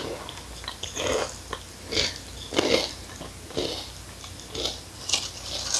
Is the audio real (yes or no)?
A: yes